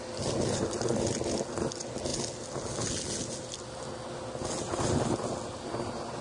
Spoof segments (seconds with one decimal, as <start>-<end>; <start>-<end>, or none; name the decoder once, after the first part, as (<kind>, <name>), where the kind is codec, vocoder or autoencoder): none